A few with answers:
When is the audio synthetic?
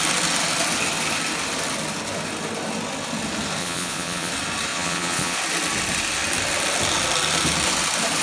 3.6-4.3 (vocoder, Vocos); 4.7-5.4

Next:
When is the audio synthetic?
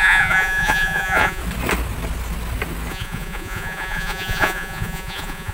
0.0-1.4 (vocoder, Vocos); 2.9-5.5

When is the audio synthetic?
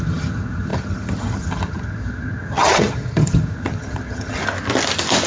0.0-4.4 (vocoder, HiFi-GAN)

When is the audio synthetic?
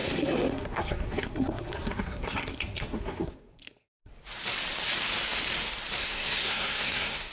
0.0-4.1 (codec, SNAC); 6.0-7.3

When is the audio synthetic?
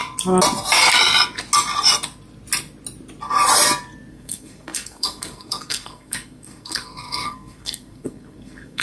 4.1-8.8 (codec, SNAC)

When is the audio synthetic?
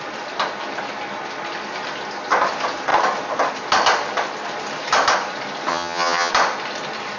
5.7-6.3 (vocoder, HiFi-GAN)